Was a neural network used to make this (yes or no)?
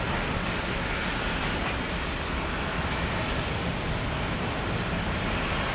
no